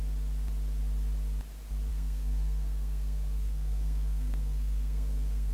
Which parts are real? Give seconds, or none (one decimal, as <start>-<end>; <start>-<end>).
0.0-1.9